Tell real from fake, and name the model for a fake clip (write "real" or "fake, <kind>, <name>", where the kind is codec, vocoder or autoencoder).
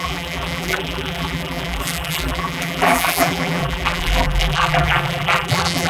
fake, vocoder, BigVGAN v2